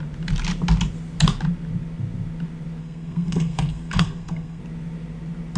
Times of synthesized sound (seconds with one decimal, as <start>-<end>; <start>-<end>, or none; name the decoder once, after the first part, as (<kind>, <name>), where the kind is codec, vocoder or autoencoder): 2.8-4.6 (codec, SNAC)